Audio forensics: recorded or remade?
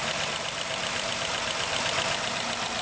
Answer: recorded